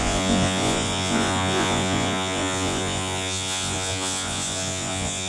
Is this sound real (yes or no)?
no